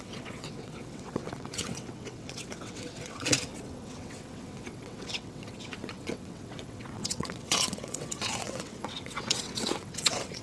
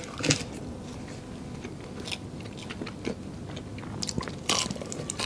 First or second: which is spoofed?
first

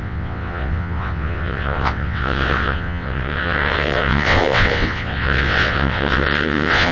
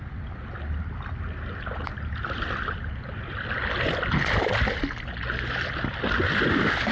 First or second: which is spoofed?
first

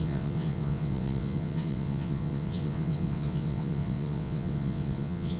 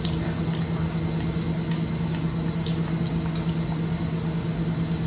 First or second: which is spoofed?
first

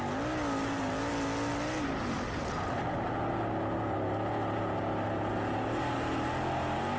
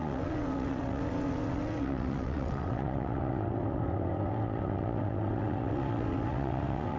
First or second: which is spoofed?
second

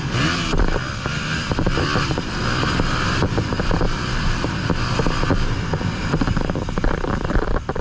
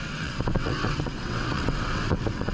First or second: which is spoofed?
second